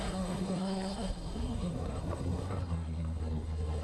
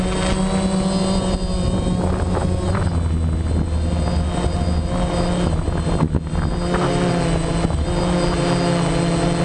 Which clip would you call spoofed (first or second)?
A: first